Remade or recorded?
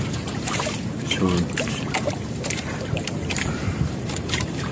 remade